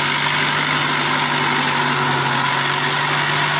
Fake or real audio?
real